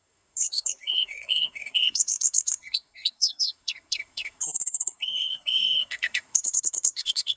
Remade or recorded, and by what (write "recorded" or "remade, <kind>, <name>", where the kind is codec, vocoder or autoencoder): remade, codec, SNAC